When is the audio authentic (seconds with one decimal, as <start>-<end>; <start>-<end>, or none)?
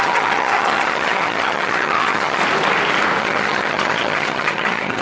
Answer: 2.4-3.2